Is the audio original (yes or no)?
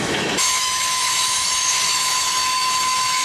no